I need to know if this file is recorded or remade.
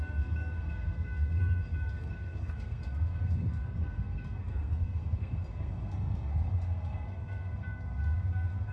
remade